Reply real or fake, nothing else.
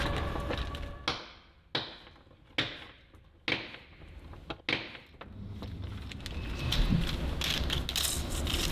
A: real